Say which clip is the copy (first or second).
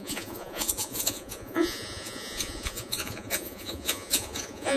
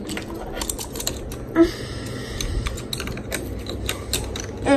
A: first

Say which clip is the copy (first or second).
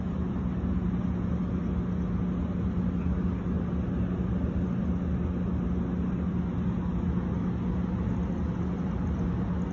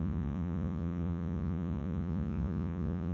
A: second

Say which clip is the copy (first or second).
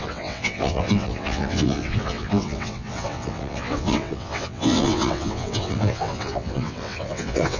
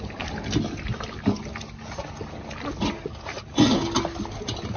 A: first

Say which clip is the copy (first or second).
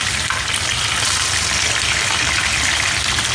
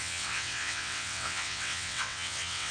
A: second